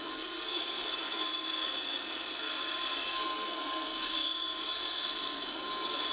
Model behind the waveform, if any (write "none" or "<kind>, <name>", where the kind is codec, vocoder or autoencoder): codec, SNAC